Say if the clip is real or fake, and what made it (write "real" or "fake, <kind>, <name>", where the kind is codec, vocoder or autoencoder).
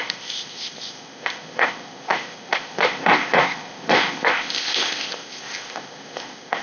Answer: fake, codec, ZipCodec